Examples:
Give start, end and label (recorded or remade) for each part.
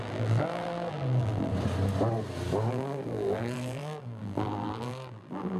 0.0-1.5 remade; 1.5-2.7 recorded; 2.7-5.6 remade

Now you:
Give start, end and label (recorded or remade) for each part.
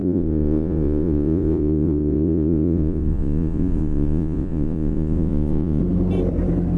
0.0-5.8 remade; 5.8-6.8 recorded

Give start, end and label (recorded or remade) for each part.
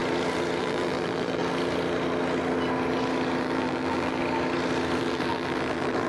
0.0-0.6 recorded; 0.6-1.4 remade; 1.4-3.4 recorded; 3.4-4.2 remade; 4.2-5.0 recorded; 5.0-6.1 remade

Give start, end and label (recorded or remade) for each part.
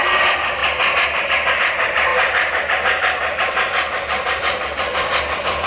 0.0-2.1 recorded; 2.1-5.7 remade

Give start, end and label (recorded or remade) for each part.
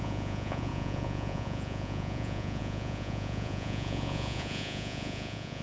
0.0-5.6 remade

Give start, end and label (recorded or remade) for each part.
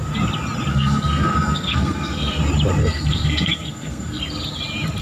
0.0-0.7 recorded; 0.7-2.4 remade; 2.4-2.8 recorded; 2.8-4.2 remade; 4.2-5.0 recorded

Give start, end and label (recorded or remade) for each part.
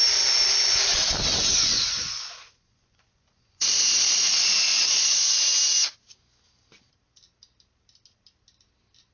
0.0-1.3 recorded; 1.3-3.8 remade; 3.8-4.7 recorded; 4.7-5.4 remade; 5.4-9.1 recorded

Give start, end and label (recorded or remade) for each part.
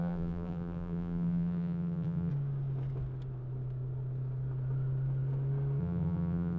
0.0-2.3 remade; 2.3-5.8 recorded; 5.8-6.6 remade